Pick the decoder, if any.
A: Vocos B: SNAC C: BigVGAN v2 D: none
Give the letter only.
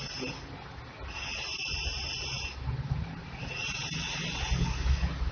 D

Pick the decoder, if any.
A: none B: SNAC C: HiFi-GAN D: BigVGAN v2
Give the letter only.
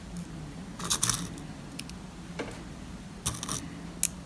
A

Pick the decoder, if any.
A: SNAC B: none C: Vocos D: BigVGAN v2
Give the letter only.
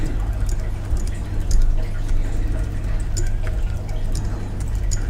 B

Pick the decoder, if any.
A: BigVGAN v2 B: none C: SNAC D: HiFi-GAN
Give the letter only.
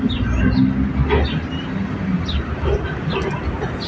B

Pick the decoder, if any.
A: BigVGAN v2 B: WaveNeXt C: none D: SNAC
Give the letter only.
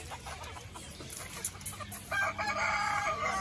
C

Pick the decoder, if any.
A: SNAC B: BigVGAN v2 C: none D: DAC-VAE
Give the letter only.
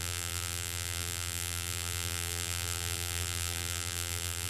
B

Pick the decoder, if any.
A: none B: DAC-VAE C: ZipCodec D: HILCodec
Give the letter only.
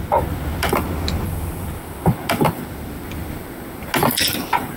A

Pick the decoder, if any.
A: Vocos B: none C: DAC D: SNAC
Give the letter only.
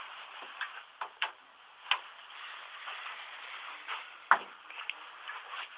B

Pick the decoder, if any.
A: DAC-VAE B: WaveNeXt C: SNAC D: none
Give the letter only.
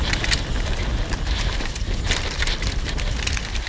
D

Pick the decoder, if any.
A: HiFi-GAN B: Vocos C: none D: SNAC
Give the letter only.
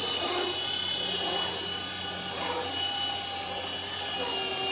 C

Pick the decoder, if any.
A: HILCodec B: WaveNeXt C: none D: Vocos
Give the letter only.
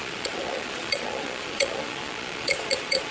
D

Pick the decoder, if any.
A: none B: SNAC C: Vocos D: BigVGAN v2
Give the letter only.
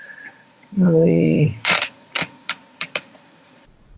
C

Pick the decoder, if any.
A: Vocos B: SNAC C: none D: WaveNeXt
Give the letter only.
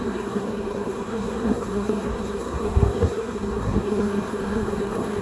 B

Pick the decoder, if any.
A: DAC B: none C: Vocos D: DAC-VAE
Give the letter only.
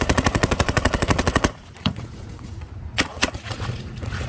C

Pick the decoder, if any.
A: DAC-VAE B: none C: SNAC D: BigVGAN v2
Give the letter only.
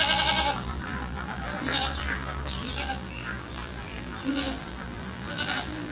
D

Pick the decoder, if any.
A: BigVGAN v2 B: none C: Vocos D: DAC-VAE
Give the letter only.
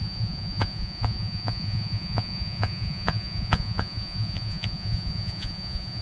C